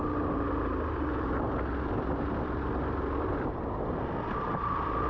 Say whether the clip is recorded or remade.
recorded